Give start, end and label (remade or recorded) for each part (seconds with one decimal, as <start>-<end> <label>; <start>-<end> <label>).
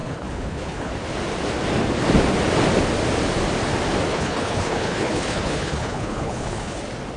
0.0-0.9 remade; 0.9-4.1 recorded; 4.1-6.8 remade; 6.8-7.2 recorded